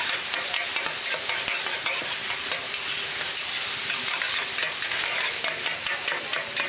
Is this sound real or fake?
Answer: real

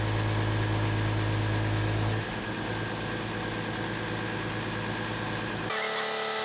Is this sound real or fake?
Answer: real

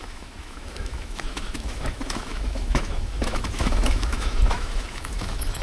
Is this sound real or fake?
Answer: fake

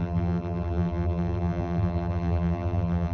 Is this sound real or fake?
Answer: fake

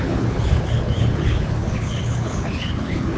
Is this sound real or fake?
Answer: fake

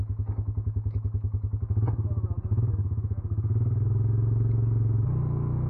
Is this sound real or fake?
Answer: fake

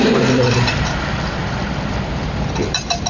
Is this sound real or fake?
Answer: fake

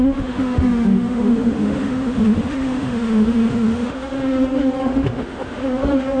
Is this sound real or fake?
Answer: fake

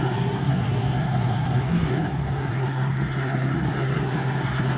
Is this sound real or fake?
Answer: fake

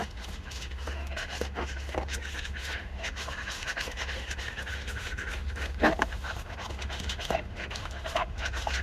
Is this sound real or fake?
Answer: fake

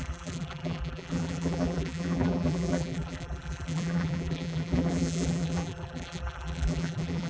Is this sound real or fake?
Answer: fake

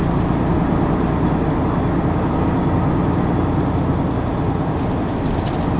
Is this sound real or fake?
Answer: real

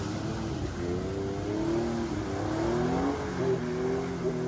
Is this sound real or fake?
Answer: real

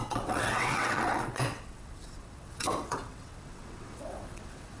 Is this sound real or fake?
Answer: fake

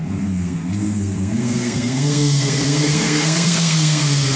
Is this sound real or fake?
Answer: fake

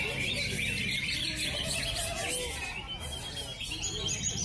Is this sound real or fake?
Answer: real